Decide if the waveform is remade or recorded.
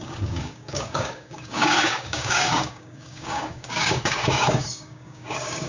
remade